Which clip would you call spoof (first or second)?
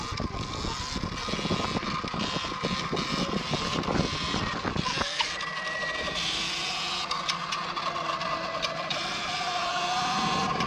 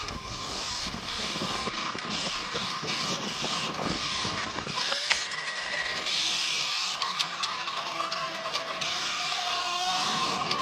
second